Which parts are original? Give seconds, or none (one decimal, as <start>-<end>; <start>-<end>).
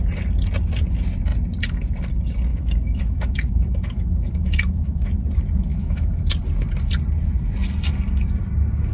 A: 0.0-2.5; 5.1-5.7; 6.2-8.9